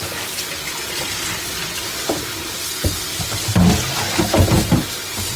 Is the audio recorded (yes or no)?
yes